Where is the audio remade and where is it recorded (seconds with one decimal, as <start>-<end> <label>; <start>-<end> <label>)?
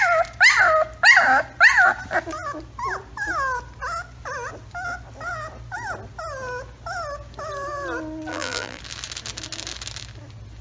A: 0.0-8.3 recorded; 8.3-8.8 remade; 8.8-10.6 recorded